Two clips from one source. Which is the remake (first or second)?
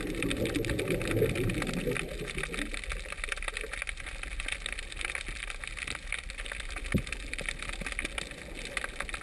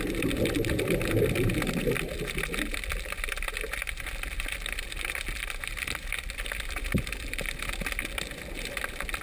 second